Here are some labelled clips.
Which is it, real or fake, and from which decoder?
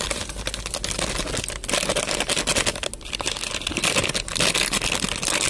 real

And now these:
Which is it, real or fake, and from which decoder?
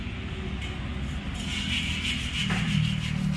real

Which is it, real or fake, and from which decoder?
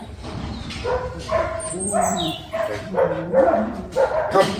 fake, vocoder, BigVGAN v2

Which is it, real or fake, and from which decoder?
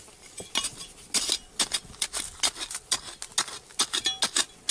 real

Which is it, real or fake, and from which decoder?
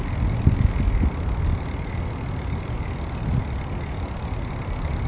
real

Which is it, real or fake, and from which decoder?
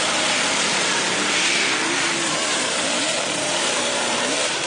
fake, vocoder, BigVGAN v2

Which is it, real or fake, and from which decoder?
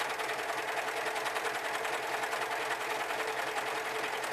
real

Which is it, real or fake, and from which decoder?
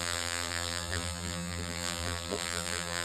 fake, vocoder, BigVGAN v2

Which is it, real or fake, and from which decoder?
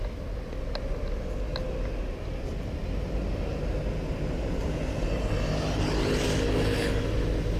real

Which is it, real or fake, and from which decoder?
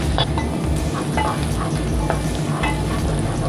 real